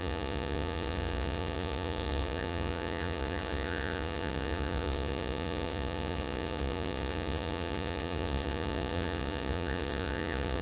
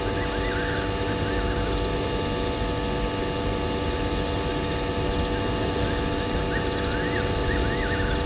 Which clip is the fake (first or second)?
first